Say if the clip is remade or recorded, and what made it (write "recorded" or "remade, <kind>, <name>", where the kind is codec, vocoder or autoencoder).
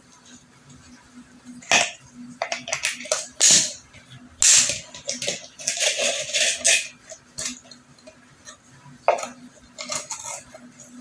recorded